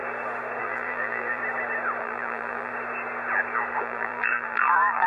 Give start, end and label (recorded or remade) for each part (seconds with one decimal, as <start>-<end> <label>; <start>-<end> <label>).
0.0-0.6 recorded; 0.6-1.4 remade; 1.4-2.0 recorded; 2.0-2.7 remade; 2.7-3.8 recorded; 3.8-5.1 remade